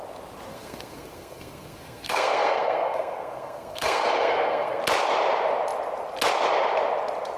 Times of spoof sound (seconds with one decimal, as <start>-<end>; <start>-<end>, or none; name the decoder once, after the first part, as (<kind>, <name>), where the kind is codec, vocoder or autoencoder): 0.5-4.8 (codec, SNAC)